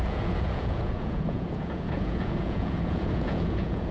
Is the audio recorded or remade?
remade